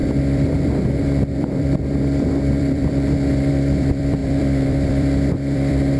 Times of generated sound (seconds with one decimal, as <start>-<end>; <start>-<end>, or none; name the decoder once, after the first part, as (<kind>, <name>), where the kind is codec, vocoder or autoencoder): 0.0-6.0 (vocoder, BigVGAN v2)